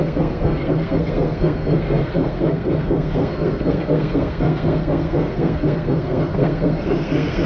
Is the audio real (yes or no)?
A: no